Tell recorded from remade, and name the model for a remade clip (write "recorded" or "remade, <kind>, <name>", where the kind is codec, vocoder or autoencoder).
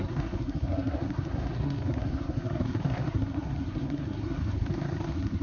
remade, codec, SNAC